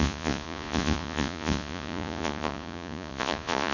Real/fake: fake